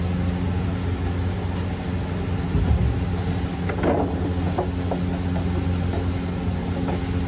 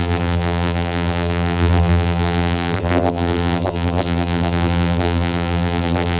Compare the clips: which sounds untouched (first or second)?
first